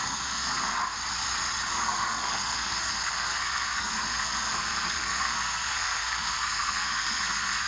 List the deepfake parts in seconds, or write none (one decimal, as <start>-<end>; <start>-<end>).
0.0-0.8; 1.7-7.7